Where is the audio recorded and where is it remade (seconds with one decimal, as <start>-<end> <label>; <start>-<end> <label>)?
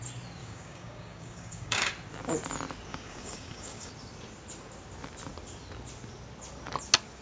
0.0-0.4 recorded; 0.4-1.9 remade; 1.9-2.9 recorded; 2.9-3.9 remade; 3.9-7.2 recorded